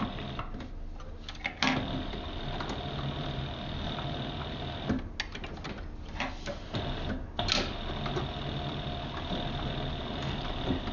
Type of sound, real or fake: real